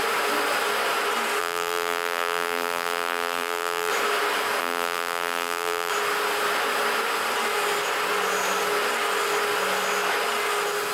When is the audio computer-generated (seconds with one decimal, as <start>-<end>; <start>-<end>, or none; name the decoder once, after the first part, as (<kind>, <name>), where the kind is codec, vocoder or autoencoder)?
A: 1.4-3.9 (vocoder, BigVGAN v2); 4.6-5.9